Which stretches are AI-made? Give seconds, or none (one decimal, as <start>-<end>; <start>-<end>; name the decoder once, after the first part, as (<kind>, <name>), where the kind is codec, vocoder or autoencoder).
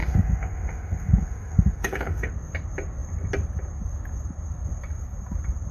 0.0-2.3 (autoencoder, DAC-VAE)